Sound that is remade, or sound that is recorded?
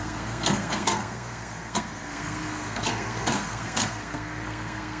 remade